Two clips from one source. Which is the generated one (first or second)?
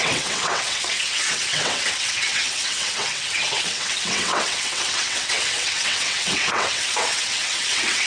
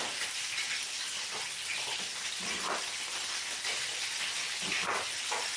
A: first